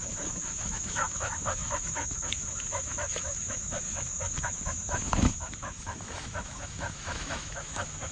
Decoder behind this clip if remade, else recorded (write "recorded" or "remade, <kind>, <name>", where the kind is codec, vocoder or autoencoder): remade, autoencoder, DAC-VAE